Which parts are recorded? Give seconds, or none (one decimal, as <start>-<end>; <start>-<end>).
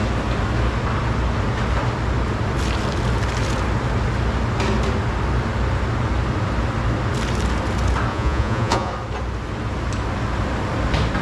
0.0-8.1; 8.9-11.2